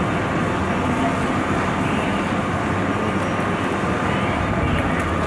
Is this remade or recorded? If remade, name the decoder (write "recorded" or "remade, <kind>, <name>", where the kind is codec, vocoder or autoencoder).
recorded